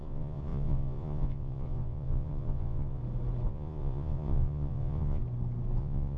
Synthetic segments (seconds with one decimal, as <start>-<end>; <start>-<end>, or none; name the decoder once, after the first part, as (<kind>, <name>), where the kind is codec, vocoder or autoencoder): 0.0-3.0 (vocoder, Vocos); 3.5-5.2; 5.8-6.2